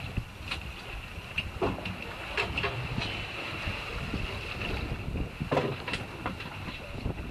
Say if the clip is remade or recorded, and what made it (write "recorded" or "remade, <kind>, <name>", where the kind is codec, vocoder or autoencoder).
recorded